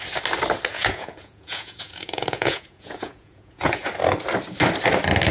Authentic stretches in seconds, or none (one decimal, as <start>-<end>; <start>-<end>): 0.0-0.7; 3.9-5.3